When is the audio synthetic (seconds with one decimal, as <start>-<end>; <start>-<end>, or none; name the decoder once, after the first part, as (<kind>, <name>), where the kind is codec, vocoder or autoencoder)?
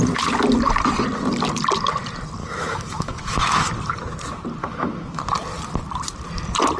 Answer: 2.4-3.7 (autoencoder, DAC-VAE); 4.6-5.2